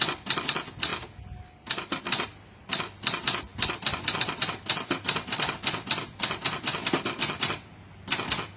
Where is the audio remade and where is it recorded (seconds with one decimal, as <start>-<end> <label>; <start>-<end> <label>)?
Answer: 0.0-8.6 recorded

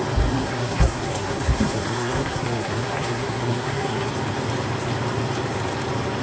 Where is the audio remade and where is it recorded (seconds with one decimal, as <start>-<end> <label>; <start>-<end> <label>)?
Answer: 0.0-0.4 recorded; 0.4-4.1 remade; 4.1-6.2 recorded

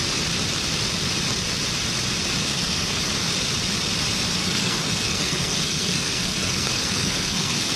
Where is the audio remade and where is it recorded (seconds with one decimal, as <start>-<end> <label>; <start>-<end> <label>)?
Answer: 0.0-2.4 recorded; 2.4-3.0 remade; 3.0-4.4 recorded; 4.4-7.8 remade

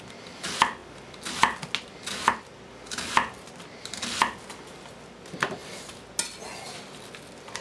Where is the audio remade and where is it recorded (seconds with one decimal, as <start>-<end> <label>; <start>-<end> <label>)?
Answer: 0.0-7.6 recorded

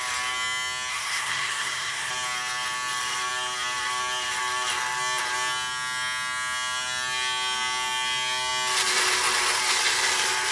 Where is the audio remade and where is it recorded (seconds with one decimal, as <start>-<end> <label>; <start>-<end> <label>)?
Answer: 0.0-0.9 recorded; 0.9-2.1 remade; 2.1-10.5 recorded

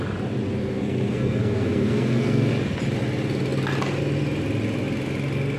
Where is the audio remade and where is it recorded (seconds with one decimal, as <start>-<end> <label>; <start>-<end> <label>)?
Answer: 0.0-0.6 recorded; 0.6-2.5 remade; 2.5-5.6 recorded

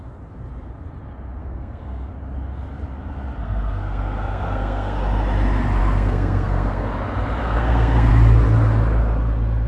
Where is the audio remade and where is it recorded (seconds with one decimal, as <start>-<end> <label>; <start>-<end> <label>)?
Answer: 0.0-1.4 recorded; 1.4-2.1 remade; 2.1-3.4 recorded; 3.4-5.0 remade; 5.0-5.8 recorded; 5.8-6.9 remade; 6.9-7.4 recorded; 7.4-8.1 remade; 8.1-9.7 recorded